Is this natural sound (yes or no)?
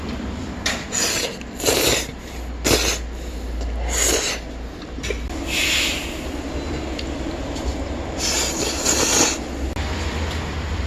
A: yes